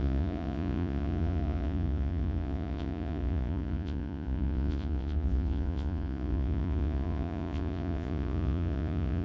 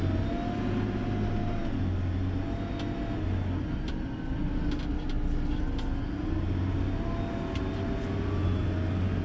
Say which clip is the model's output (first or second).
first